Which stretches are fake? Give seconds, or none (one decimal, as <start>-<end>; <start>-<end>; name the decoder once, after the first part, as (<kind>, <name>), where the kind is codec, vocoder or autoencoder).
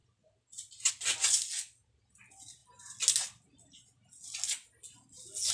none